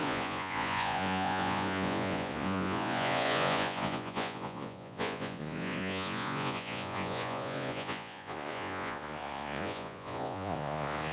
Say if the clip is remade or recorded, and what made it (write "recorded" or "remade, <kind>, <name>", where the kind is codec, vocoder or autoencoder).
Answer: remade, vocoder, Vocos